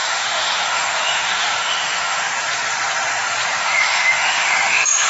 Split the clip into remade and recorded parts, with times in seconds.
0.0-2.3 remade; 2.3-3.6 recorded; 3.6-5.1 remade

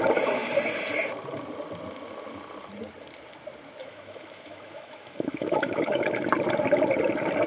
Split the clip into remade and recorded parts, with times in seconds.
0.0-3.8 recorded; 3.8-6.2 remade; 6.2-7.5 recorded

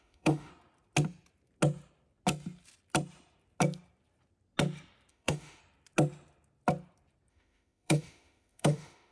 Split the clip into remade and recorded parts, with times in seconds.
0.0-0.5 remade; 0.5-5.1 recorded; 5.1-5.6 remade; 5.6-7.3 recorded; 7.3-9.1 remade

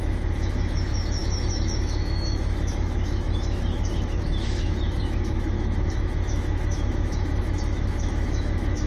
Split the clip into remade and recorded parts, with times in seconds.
0.0-8.9 remade

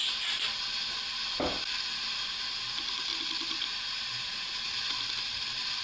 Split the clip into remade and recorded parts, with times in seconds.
0.0-5.8 recorded

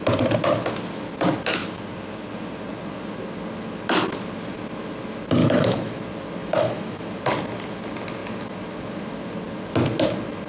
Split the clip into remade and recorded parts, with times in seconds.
0.0-5.4 recorded; 5.4-6.0 remade; 6.0-6.4 recorded; 6.4-7.1 remade; 7.1-10.5 recorded

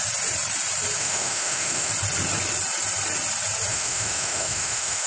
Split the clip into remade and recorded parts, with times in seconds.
0.0-1.0 recorded; 1.0-1.9 remade; 1.9-3.7 recorded; 3.7-5.1 remade

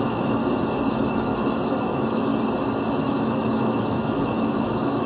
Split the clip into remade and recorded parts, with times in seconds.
0.0-0.4 remade; 0.4-0.9 recorded; 0.9-1.3 remade; 1.3-1.8 recorded; 1.8-2.3 remade; 2.3-2.9 recorded; 2.9-5.1 remade